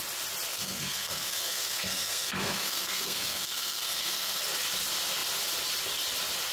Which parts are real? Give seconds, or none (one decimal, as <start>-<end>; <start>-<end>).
0.0-0.5; 4.4-6.5